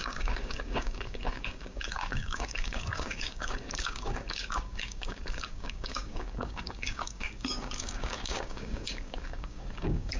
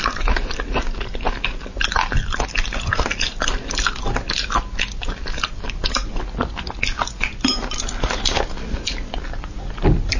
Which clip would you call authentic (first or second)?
second